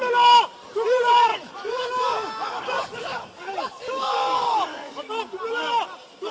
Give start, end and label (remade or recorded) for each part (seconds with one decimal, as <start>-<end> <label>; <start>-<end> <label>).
0.0-1.3 recorded; 1.3-5.1 remade; 5.1-6.3 recorded